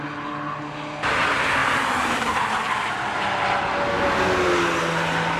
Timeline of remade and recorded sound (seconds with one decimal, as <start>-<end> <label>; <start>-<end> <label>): 0.0-5.4 recorded